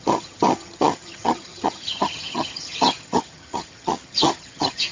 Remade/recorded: remade